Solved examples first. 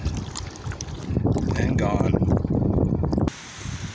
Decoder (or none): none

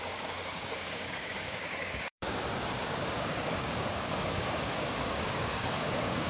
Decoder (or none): codec, DAC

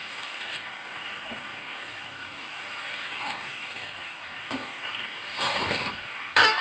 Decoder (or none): codec, DAC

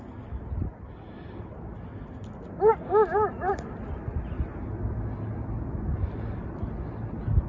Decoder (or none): none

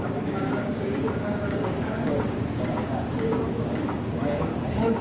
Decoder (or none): codec, DAC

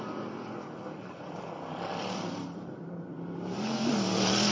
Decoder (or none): none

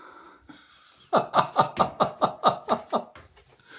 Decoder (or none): none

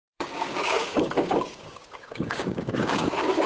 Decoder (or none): codec, DAC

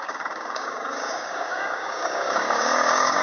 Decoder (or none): codec, DAC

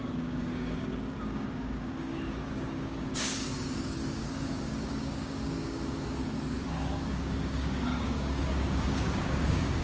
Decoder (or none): codec, DAC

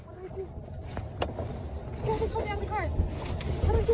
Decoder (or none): none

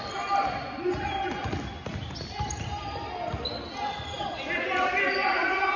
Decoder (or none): none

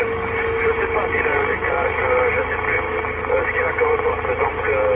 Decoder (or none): none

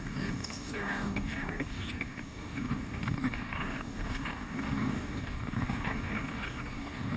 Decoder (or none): codec, DAC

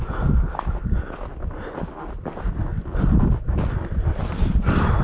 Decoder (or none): none